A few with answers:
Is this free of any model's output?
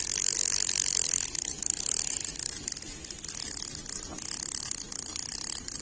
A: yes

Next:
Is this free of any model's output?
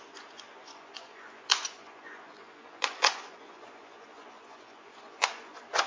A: no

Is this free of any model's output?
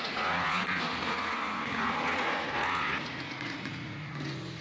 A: no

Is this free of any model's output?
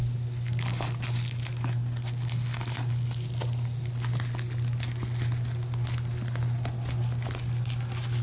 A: yes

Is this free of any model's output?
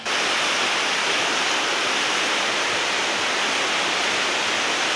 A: yes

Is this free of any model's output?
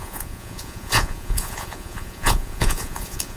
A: no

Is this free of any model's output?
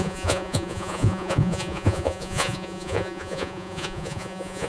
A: no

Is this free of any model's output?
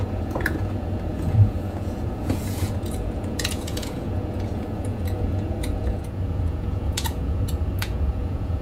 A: no